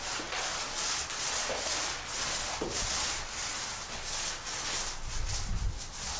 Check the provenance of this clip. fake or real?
real